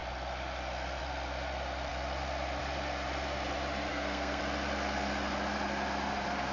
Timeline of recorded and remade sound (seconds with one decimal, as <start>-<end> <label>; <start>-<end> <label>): 0.0-3.9 recorded; 3.9-4.4 remade; 4.4-6.5 recorded